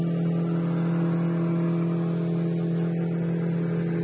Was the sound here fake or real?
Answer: real